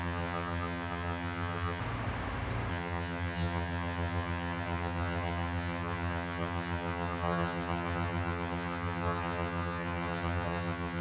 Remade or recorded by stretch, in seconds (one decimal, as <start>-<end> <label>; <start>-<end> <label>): 0.0-1.8 remade; 1.8-2.7 recorded; 2.7-11.0 remade

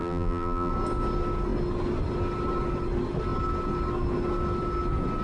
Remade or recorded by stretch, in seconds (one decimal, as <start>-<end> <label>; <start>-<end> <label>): 0.0-0.7 remade; 0.7-5.2 recorded